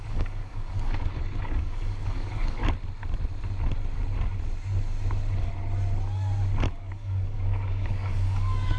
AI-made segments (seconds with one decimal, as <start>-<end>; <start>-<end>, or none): 0.0-2.6; 6.7-8.8